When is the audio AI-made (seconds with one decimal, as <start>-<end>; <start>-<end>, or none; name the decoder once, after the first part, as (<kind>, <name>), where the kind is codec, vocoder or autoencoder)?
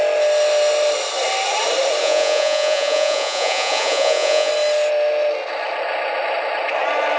2.0-4.5 (vocoder, Vocos)